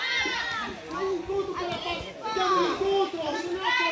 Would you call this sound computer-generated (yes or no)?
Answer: no